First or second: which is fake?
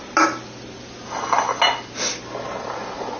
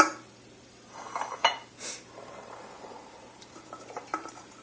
second